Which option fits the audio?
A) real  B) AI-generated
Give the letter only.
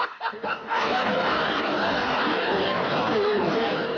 B